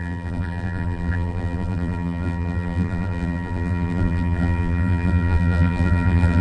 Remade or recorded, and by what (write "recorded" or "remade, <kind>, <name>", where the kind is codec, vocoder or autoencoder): remade, vocoder, BigVGAN v2